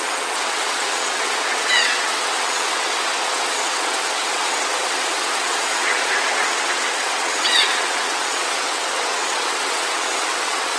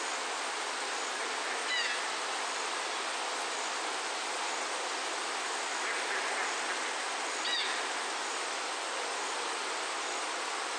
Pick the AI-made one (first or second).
first